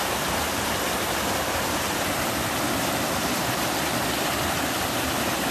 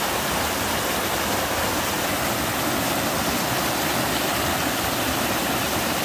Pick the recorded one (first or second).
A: second